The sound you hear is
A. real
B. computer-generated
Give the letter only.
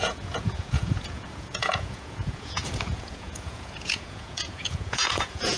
B